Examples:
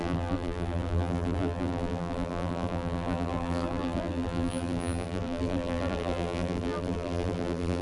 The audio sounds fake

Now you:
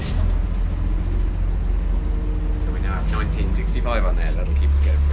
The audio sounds real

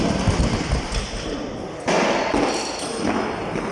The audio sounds real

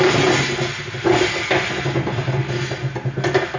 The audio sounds real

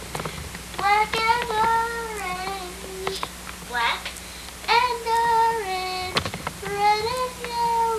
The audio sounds real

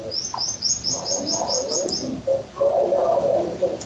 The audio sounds real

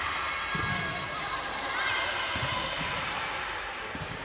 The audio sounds real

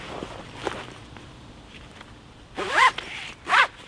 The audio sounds real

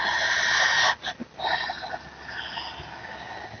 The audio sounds real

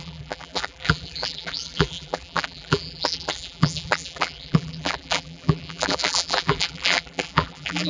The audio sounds fake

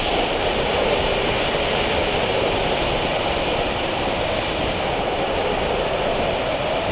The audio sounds real